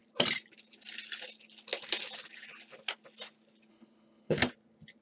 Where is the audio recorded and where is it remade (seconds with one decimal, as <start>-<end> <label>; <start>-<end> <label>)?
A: 0.0-3.7 recorded; 3.7-4.4 remade; 4.4-5.0 recorded